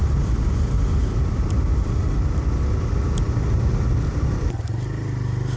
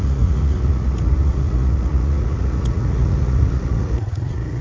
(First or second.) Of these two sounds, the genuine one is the first